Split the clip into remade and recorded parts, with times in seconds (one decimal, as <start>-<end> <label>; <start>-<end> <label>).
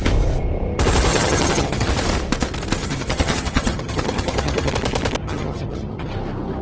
0.0-1.1 recorded; 1.1-1.9 remade; 1.9-2.8 recorded; 2.8-4.7 remade; 4.7-5.2 recorded; 5.2-6.1 remade; 6.1-6.6 recorded